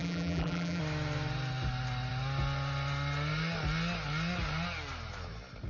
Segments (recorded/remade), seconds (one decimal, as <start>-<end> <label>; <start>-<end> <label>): 0.0-0.8 remade; 0.8-5.7 recorded

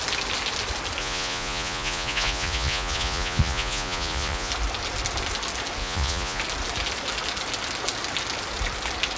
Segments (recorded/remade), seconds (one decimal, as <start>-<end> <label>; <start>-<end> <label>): 0.0-1.0 recorded; 1.0-4.5 remade; 4.5-5.8 recorded; 5.8-6.4 remade; 6.4-9.2 recorded

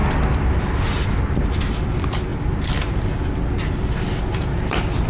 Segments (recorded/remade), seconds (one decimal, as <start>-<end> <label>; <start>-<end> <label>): 0.0-5.1 recorded

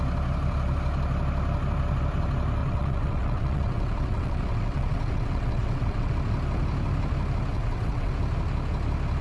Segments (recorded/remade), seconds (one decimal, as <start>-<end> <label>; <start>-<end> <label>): 0.0-2.6 recorded; 2.6-6.1 remade; 6.1-7.5 recorded; 7.5-8.1 remade; 8.1-9.2 recorded